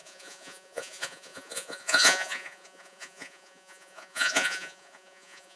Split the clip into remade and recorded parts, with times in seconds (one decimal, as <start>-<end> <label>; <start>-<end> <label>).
0.0-5.6 remade